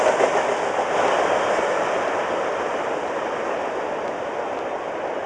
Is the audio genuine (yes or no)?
yes